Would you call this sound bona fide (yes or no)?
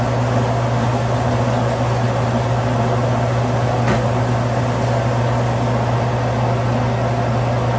yes